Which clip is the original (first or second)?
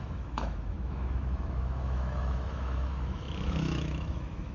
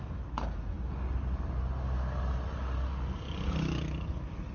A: second